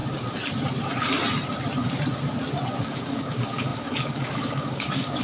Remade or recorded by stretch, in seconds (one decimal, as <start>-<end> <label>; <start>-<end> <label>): 0.0-2.8 recorded; 2.8-5.2 remade